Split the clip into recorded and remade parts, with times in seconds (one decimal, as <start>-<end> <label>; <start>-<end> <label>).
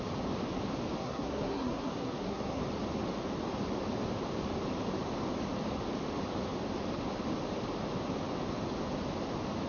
0.0-1.0 recorded; 1.0-2.6 remade; 2.6-9.7 recorded